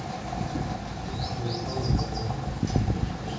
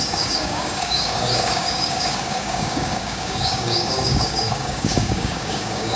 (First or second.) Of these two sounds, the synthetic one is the second